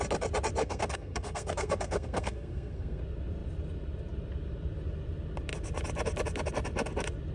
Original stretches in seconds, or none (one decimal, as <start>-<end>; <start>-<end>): 0.0-0.6; 3.0-7.3